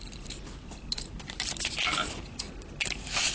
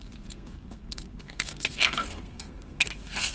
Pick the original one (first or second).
first